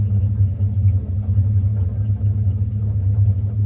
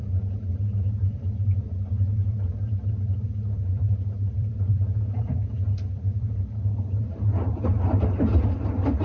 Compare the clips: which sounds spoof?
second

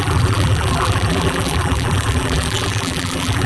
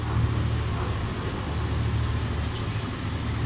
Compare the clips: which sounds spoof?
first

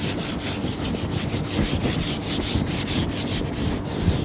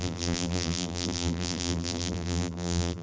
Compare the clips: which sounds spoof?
second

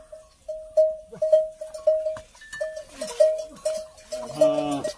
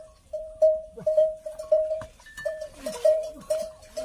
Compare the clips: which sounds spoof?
second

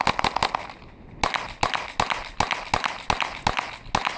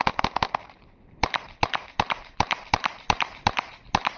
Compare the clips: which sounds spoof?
second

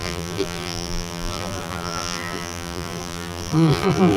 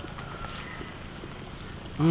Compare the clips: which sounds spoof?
first